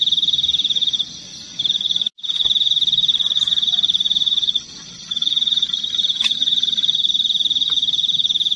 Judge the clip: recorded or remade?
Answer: recorded